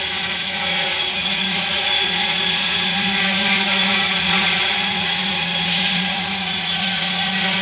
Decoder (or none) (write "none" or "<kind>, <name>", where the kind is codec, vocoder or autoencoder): vocoder, Vocos